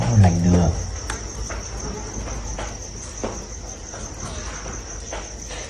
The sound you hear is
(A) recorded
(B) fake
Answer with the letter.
A